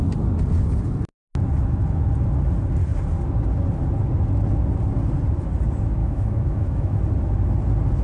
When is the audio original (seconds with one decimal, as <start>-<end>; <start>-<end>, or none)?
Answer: 0.0-6.0; 7.0-8.0